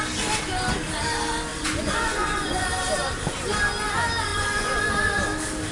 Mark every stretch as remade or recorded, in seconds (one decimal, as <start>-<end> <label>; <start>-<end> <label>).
0.0-1.5 recorded; 1.5-2.7 remade; 2.7-4.3 recorded; 4.3-4.8 remade; 4.8-5.7 recorded

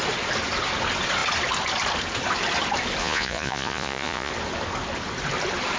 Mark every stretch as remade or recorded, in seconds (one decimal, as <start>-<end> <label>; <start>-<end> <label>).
0.0-3.0 recorded; 3.0-4.3 remade; 4.3-5.8 recorded

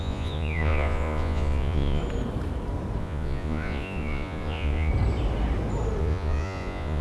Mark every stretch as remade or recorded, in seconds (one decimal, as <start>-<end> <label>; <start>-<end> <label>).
0.0-2.0 remade; 2.0-3.0 recorded; 3.0-4.9 remade; 4.9-6.0 recorded; 6.0-7.0 remade

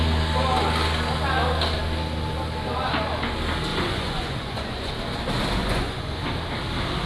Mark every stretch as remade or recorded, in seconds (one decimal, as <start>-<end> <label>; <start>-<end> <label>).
0.0-3.7 recorded; 3.7-4.9 remade; 4.9-5.6 recorded; 5.6-6.2 remade; 6.2-7.1 recorded

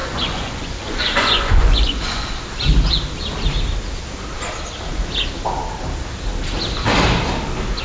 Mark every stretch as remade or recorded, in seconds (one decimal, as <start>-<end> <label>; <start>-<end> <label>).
0.0-2.2 remade; 2.2-7.8 recorded

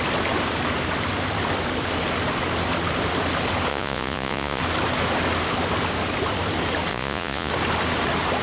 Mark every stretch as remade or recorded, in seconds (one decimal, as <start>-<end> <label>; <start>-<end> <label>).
0.0-3.7 recorded; 3.7-4.6 remade; 4.6-6.9 recorded; 6.9-7.5 remade; 7.5-8.4 recorded

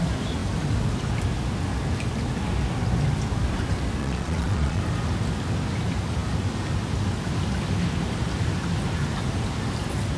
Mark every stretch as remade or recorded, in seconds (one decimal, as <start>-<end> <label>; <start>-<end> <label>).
0.0-4.0 recorded; 4.0-4.8 remade; 4.8-10.2 recorded

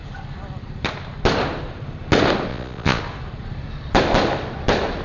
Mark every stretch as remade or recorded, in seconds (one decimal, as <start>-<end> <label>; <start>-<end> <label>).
0.0-2.5 recorded; 2.5-3.0 remade; 3.0-5.0 recorded